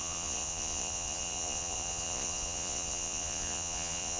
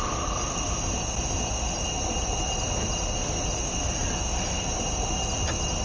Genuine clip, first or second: second